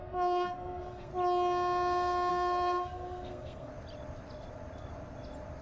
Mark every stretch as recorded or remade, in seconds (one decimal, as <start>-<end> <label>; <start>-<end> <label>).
0.0-1.1 remade; 1.1-2.3 recorded; 2.3-3.7 remade; 3.7-5.6 recorded